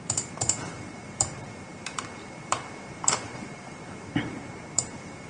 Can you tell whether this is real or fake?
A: fake